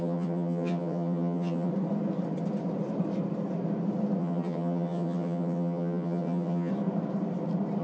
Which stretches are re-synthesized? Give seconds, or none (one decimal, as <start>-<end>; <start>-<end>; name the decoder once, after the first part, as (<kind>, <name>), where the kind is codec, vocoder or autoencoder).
0.0-1.7 (vocoder, HiFi-GAN); 4.2-6.7